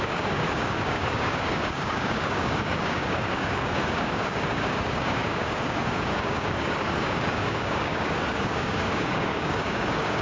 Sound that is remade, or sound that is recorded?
remade